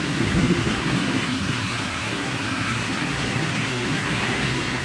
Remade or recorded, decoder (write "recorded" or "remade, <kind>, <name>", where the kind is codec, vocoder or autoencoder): remade, codec, SNAC